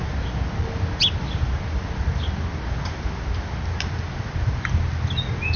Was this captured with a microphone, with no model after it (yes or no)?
yes